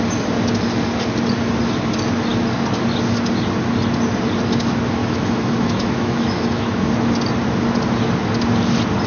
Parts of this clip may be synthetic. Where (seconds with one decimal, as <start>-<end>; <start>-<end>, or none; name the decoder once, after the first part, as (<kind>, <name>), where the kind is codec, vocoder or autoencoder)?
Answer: 5.0-6.9 (autoencoder, DAC-VAE)